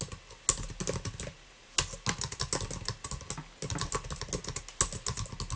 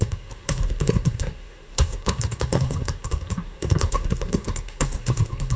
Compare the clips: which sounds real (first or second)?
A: first